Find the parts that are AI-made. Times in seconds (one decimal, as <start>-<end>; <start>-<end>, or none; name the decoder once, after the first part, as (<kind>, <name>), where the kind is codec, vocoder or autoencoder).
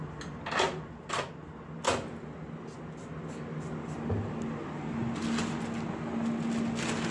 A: none